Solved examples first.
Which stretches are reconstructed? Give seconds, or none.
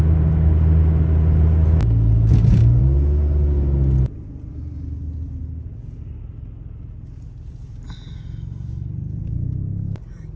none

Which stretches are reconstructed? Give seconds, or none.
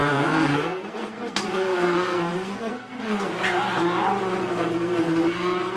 0.0-3.3 (codec, SNAC); 4.4-5.8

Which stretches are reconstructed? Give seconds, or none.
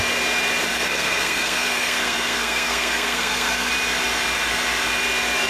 0.7-3.7 (codec, SNAC)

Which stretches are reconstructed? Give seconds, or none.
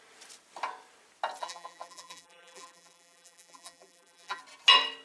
1.4-4.4 (vocoder, BigVGAN v2)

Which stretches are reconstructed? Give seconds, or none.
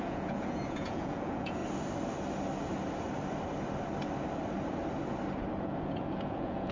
0.0-1.6 (vocoder, Vocos); 5.6-6.7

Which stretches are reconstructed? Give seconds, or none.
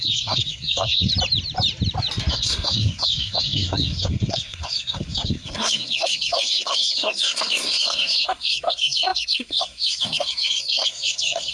0.0-1.1 (codec, SNAC); 2.3-11.5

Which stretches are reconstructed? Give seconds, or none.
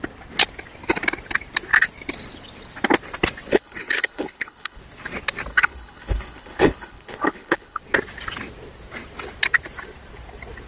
3.5-4.8 (codec, HILCodec); 5.5-7.8